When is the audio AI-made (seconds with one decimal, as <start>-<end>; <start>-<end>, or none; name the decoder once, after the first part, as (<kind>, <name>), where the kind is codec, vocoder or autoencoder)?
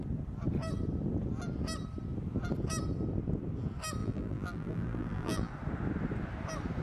4.0-5.5 (vocoder, BigVGAN v2)